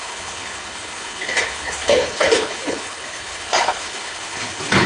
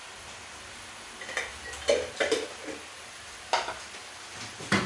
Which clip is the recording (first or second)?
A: second